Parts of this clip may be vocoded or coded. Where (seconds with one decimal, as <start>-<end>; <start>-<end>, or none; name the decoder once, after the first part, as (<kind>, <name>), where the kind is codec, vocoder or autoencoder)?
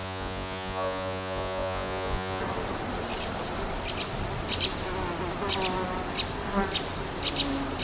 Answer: 0.0-2.4 (vocoder, Vocos)